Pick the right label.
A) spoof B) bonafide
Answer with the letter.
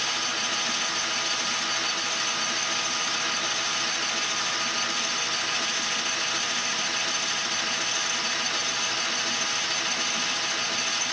B